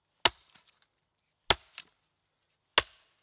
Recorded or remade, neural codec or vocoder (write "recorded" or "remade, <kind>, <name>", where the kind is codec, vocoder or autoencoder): recorded